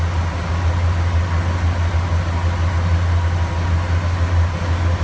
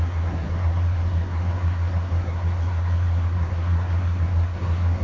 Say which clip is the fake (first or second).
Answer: second